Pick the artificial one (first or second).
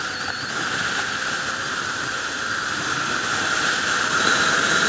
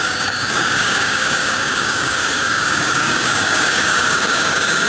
second